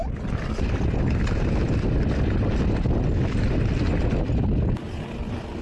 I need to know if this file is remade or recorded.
recorded